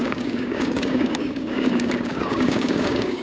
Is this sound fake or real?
fake